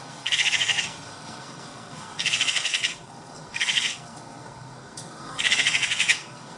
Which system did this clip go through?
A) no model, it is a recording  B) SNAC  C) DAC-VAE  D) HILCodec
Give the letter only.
B